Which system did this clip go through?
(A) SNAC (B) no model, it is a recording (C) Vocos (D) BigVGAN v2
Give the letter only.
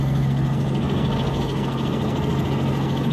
A